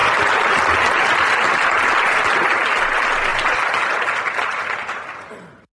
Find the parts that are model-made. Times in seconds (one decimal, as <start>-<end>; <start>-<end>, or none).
none